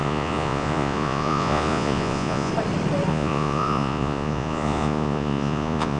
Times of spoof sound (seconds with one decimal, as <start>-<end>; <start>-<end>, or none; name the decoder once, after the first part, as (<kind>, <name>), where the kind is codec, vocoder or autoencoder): 0.0-2.5 (vocoder, Vocos); 3.1-6.0